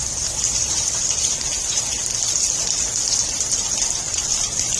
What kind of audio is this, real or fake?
real